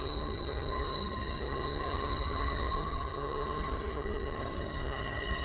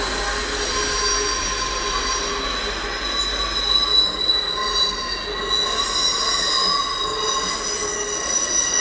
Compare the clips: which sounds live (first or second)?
second